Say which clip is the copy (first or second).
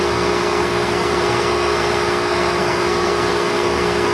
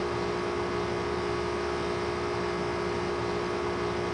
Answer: first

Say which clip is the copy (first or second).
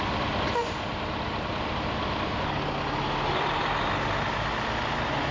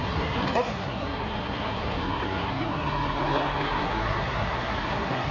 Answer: second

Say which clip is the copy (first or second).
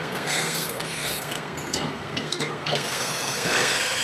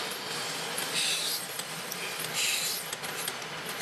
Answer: first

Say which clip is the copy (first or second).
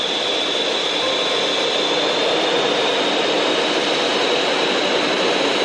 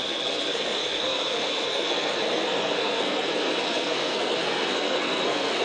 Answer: second